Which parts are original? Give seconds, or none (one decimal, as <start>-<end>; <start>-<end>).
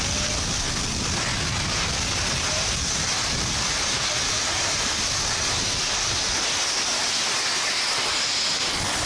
0.0-9.1